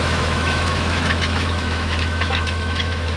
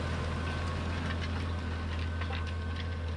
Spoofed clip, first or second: first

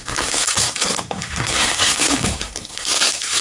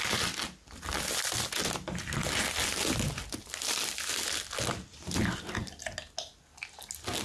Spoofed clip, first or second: first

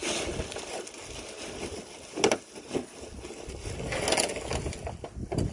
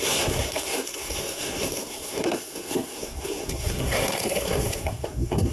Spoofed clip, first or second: second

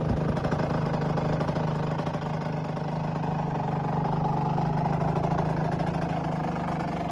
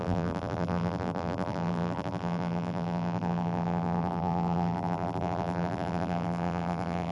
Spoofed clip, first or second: second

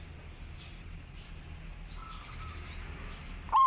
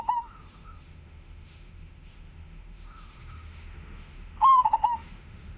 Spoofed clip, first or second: second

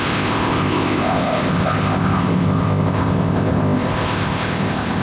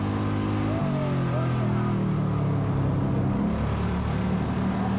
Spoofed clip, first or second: first